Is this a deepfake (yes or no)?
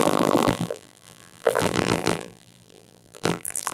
yes